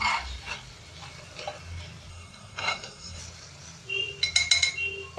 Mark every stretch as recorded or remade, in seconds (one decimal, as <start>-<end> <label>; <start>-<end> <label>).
0.0-2.1 recorded; 2.1-3.2 remade; 3.2-5.2 recorded

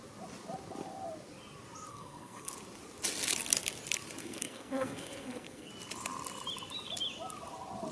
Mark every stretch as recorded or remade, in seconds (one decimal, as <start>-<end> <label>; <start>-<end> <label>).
0.0-1.9 recorded; 1.9-2.5 remade; 2.5-4.2 recorded; 4.2-5.7 remade; 5.7-7.9 recorded

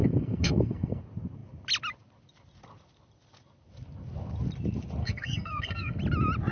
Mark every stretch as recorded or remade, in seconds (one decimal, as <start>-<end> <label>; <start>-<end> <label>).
0.0-1.0 remade; 1.0-5.0 recorded; 5.0-6.0 remade; 6.0-6.5 recorded

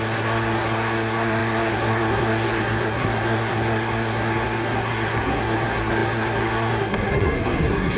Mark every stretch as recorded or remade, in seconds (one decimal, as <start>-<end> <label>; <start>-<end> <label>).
0.0-8.0 remade

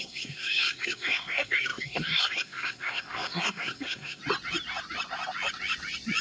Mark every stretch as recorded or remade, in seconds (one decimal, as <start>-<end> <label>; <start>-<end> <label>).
0.0-4.2 remade; 4.2-6.2 recorded

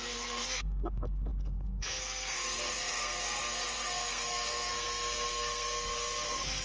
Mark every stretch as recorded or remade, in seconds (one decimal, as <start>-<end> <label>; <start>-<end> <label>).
0.0-6.6 remade

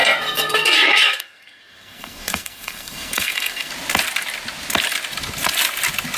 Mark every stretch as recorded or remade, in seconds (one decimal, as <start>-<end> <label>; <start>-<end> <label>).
0.0-3.7 remade; 3.7-6.2 recorded

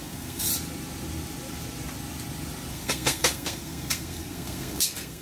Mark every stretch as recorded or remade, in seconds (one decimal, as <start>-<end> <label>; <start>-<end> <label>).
0.0-0.5 remade; 0.5-2.7 recorded; 2.7-5.2 remade